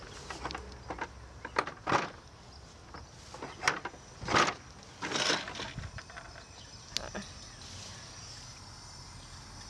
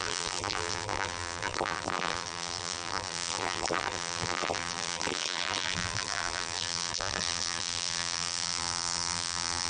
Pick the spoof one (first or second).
second